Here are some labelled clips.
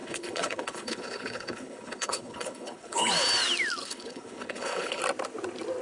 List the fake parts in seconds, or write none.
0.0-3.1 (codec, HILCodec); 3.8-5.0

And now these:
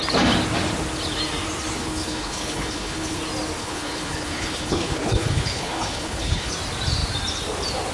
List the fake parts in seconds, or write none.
1.8-3.2 (codec, HILCodec); 3.6-6.5

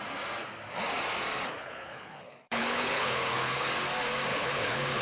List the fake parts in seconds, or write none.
1.6-3.7 (codec, HILCodec); 4.3-5.0